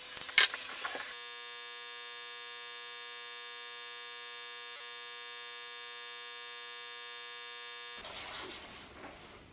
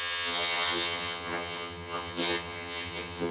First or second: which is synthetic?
second